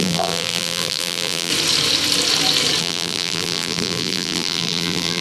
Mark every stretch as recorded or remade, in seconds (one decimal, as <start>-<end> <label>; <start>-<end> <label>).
0.0-1.5 remade; 1.5-2.8 recorded; 2.8-5.2 remade